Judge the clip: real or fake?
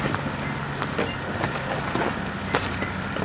real